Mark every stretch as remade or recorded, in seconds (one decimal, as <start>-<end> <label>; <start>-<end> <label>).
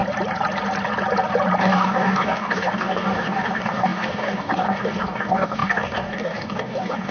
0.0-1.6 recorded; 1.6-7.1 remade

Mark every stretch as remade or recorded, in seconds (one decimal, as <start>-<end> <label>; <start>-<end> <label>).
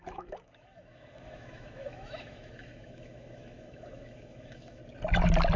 0.0-4.8 remade; 4.8-5.6 recorded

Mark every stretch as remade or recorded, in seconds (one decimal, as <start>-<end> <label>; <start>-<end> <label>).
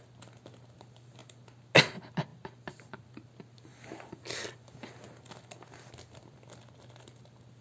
0.0-2.3 recorded; 2.3-3.3 remade; 3.3-7.6 recorded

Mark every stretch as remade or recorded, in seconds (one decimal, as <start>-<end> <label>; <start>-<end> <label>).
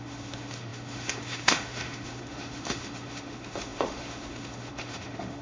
0.0-5.4 remade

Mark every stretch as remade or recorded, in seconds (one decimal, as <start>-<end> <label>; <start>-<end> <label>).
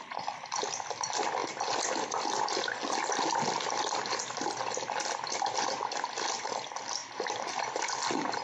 0.0-7.0 recorded; 7.0-7.9 remade; 7.9-8.4 recorded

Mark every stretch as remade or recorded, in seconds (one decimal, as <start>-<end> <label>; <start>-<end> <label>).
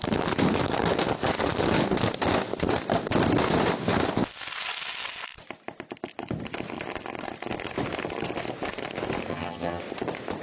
0.0-9.3 recorded; 9.3-9.8 remade; 9.8-10.4 recorded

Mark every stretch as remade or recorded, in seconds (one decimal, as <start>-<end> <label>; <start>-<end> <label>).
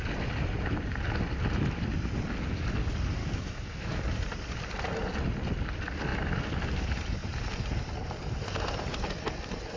0.0-3.2 recorded; 3.2-4.0 remade; 4.0-9.8 recorded